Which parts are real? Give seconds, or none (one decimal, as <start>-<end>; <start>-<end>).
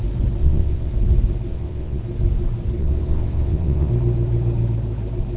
0.0-0.4; 0.9-1.5; 2.0-2.8; 3.9-5.4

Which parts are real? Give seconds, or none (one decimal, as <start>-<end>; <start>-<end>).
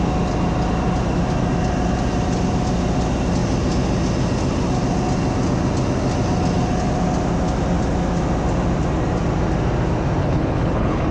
0.0-10.2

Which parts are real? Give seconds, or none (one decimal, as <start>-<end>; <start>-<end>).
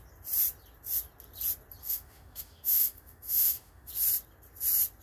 0.0-1.8; 3.9-5.0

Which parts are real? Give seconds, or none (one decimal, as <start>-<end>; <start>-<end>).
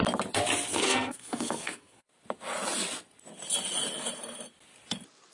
0.0-0.7; 2.0-5.3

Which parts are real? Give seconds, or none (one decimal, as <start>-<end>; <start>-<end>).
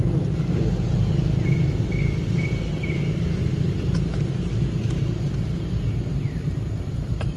0.0-6.1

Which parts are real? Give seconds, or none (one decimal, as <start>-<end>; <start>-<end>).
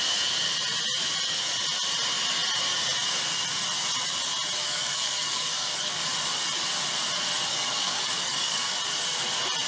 0.0-4.6; 6.0-7.5; 8.8-9.7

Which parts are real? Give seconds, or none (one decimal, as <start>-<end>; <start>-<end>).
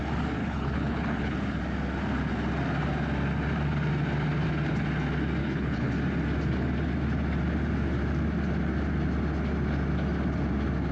0.0-0.4; 1.6-5.4; 5.9-10.9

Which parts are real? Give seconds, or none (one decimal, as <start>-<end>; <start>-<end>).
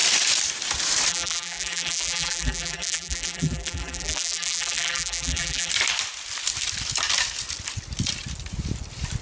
0.0-1.1; 5.7-9.2